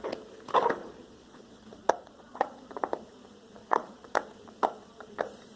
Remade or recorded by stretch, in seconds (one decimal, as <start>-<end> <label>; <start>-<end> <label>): 0.0-0.8 recorded; 0.8-2.7 remade; 2.7-3.6 recorded; 3.6-4.2 remade; 4.2-5.6 recorded